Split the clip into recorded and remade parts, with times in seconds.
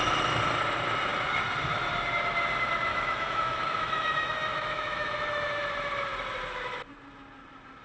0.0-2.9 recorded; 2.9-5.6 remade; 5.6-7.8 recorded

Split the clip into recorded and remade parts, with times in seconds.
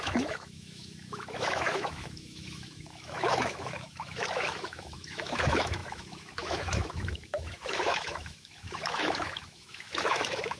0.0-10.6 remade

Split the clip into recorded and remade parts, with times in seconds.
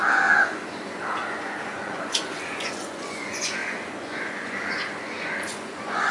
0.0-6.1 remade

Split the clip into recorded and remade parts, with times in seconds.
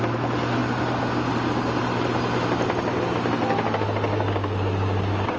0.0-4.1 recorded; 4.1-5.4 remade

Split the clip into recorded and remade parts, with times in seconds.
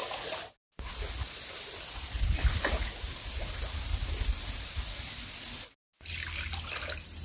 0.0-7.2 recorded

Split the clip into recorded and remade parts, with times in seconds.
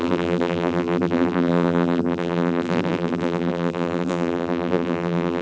0.0-5.4 remade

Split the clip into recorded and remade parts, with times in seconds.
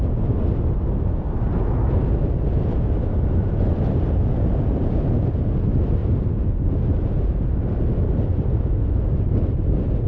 0.0-2.5 recorded; 2.5-5.3 remade; 5.3-6.0 recorded; 6.0-7.5 remade; 7.5-10.1 recorded